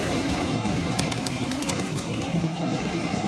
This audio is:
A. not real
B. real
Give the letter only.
A